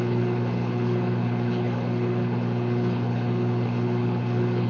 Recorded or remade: remade